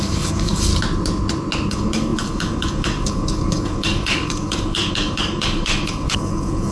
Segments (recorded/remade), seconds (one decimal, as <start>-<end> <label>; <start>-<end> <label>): 0.0-0.7 remade; 0.7-1.7 recorded; 1.7-6.7 remade